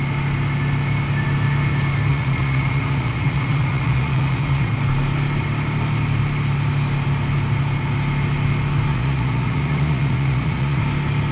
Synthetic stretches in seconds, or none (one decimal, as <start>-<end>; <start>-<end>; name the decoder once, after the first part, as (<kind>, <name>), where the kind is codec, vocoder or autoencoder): 2.1-4.7 (vocoder, Vocos); 8.9-10.8